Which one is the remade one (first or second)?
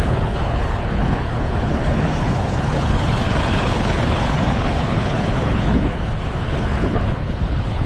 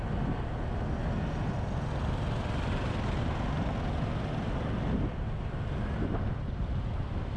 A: first